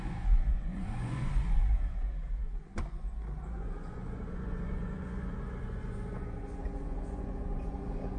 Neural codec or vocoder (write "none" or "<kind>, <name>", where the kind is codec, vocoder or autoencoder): vocoder, Vocos